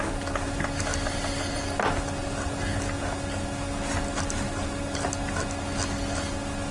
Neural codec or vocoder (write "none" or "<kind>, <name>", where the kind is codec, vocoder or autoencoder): none